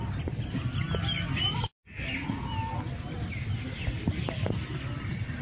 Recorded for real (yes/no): yes